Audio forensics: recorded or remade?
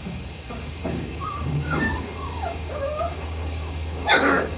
remade